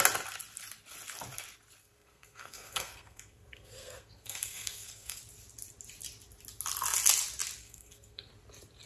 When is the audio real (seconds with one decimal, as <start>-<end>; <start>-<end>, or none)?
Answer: 0.0-1.8; 5.2-7.6; 8.3-8.9